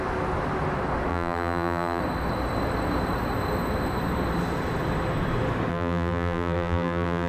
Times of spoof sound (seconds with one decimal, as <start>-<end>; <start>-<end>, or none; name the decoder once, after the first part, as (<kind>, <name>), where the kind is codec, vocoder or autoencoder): 1.1-2.0 (vocoder, BigVGAN v2); 5.7-7.3